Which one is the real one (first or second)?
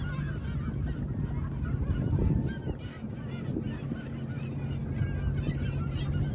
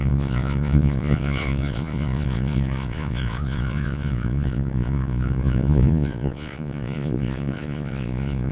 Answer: first